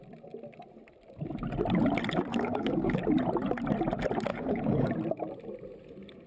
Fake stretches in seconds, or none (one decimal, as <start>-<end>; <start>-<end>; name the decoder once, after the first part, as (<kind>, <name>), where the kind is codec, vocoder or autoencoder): 2.3-3.0 (codec, DAC); 4.3-4.9